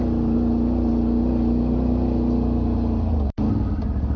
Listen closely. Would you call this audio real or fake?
real